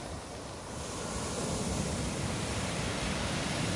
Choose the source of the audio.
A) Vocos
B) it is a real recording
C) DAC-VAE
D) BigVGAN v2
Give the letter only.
D